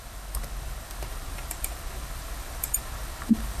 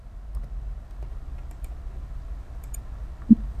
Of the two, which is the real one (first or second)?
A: second